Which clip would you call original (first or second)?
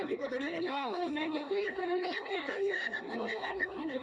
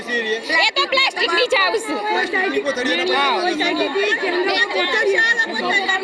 second